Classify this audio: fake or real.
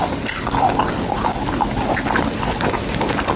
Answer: real